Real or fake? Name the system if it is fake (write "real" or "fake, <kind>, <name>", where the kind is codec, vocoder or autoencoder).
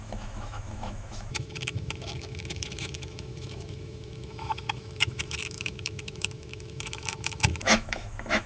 fake, autoencoder, DAC-VAE